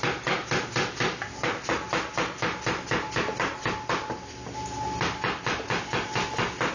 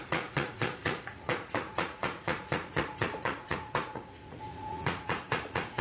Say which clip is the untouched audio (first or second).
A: first